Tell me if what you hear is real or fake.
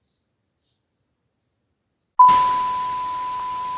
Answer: real